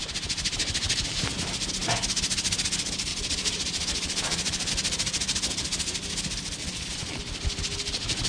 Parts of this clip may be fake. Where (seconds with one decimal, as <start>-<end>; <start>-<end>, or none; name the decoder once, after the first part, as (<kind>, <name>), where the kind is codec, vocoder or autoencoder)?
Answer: 3.1-4.7 (vocoder, Vocos); 6.6-7.2